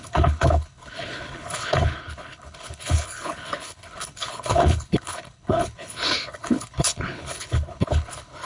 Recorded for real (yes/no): no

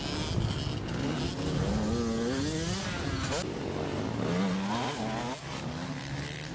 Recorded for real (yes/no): yes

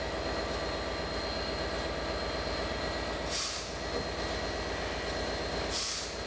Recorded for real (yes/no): yes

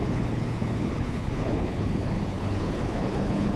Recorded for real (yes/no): no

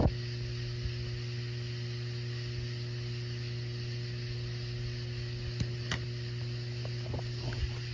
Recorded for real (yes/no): yes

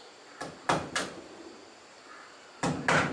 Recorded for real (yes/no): yes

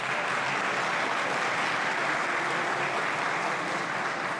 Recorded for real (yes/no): yes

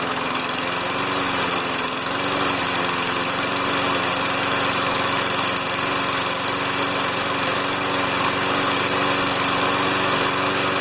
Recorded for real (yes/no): yes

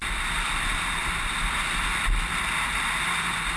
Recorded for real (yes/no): yes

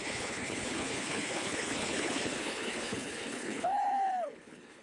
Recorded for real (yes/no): no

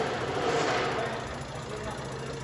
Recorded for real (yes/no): yes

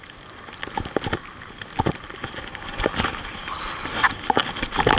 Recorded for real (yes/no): yes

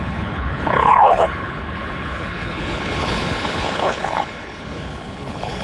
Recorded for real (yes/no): no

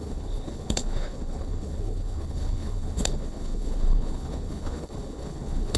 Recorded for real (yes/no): no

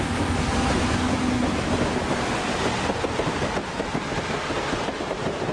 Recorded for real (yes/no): yes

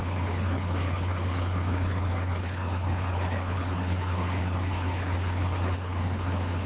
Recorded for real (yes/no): no